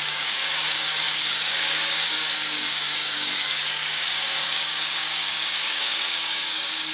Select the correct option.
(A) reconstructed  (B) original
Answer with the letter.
A